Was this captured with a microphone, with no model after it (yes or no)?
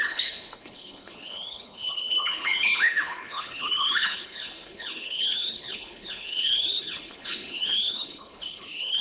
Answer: no